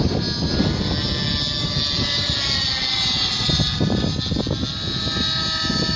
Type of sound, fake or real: real